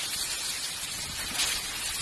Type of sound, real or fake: real